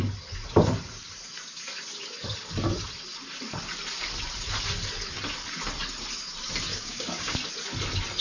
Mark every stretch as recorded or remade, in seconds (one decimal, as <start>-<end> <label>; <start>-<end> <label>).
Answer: 0.0-6.7 recorded; 6.7-7.4 remade; 7.4-8.2 recorded